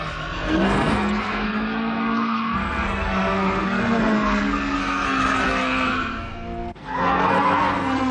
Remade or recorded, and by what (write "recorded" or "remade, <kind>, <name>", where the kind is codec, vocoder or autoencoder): remade, codec, SNAC